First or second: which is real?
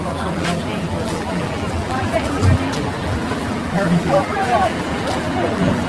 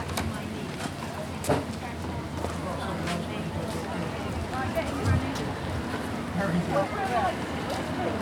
second